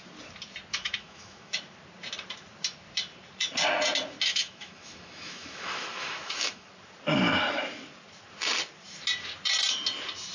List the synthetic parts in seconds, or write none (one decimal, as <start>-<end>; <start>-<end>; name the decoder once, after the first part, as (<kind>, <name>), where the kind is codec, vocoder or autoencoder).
0.7-1.6 (autoencoder, DAC-VAE); 4.3-6.7